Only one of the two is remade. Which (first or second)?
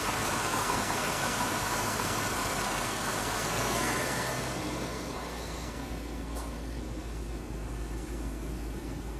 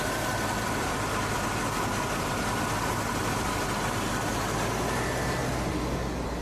first